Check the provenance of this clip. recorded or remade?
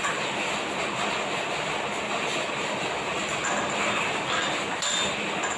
recorded